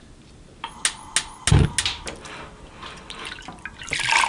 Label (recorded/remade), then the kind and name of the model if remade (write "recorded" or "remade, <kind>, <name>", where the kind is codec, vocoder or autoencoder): recorded